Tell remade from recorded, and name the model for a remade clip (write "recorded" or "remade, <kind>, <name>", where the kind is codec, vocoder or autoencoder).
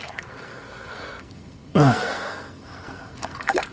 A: remade, codec, SNAC